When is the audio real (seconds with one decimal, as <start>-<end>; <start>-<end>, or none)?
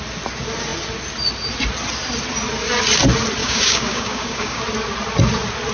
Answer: 0.0-3.4; 4.6-5.7